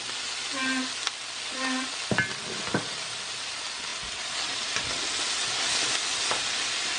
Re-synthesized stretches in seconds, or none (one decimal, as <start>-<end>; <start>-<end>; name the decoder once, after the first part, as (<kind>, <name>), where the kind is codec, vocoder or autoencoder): none